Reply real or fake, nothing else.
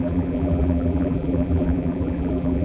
fake